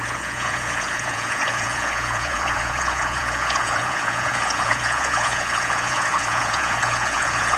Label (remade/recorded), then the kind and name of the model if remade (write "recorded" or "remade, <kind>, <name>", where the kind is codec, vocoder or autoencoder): remade, vocoder, Vocos